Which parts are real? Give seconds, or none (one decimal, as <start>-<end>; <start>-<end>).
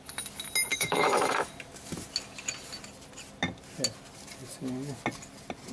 0.0-0.7; 1.5-5.7